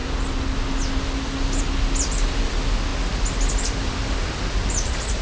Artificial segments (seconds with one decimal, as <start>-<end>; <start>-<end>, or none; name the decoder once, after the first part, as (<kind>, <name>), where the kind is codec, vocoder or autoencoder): none

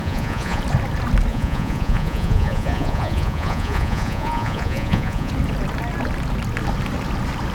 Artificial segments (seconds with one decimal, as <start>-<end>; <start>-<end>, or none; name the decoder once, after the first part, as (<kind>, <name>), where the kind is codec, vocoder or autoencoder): 0.0-0.6 (vocoder, Vocos); 1.3-5.3

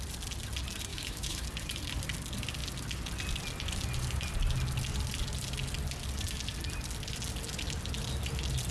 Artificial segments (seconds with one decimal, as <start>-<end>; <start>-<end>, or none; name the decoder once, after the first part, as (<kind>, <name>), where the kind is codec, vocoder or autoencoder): 0.9-1.4 (autoencoder, DAC-VAE)

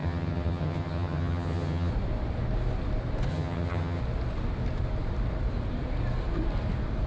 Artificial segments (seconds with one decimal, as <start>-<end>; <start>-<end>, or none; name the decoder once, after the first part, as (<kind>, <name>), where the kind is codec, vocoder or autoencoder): 0.0-1.9 (vocoder, HiFi-GAN); 3.3-4.0